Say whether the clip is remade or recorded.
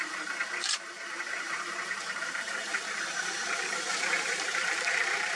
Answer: remade